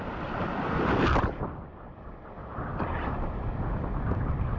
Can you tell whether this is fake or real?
fake